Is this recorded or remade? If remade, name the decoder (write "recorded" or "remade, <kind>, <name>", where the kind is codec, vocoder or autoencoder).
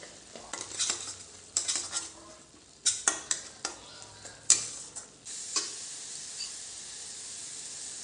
recorded